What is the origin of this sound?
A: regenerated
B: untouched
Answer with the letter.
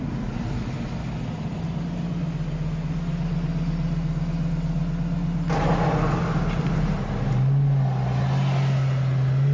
B